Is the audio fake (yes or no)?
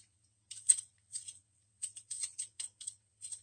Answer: yes